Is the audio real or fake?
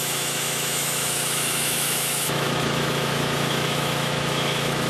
fake